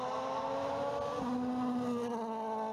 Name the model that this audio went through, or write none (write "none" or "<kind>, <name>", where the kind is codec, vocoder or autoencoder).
none